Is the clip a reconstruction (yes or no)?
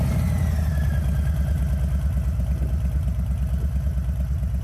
no